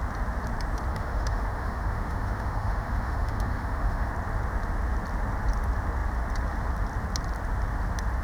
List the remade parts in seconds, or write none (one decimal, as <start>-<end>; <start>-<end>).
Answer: 0.9-4.1